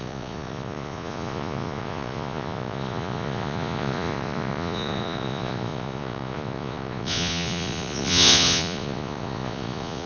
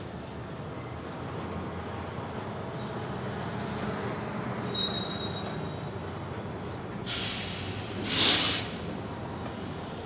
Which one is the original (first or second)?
second